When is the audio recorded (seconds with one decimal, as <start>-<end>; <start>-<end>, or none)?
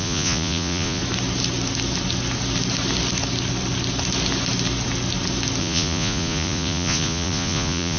1.0-5.6